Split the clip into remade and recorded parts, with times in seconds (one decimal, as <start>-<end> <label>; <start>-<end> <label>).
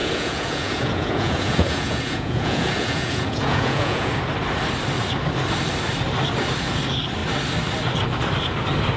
0.0-4.1 remade; 4.1-9.0 recorded